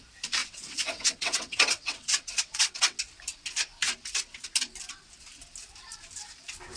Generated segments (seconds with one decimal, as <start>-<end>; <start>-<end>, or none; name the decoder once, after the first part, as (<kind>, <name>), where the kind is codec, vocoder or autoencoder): 0.4-3.0 (vocoder, WaveNeXt)